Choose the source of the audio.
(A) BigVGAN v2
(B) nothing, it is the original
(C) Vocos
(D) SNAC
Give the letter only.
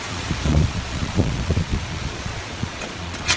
C